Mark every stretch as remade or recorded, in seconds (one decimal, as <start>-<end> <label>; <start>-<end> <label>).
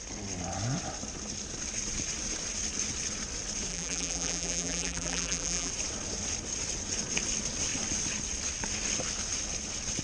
0.0-3.7 recorded; 3.7-5.7 remade; 5.7-10.0 recorded